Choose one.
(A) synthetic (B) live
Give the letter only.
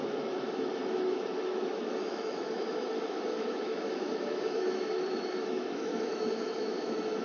A